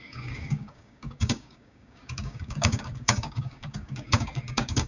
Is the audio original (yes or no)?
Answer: no